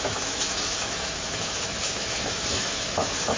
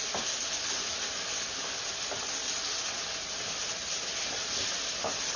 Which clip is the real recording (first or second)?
second